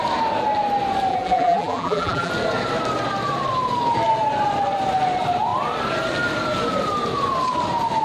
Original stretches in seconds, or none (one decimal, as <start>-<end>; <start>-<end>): 0.0-1.1; 2.3-8.0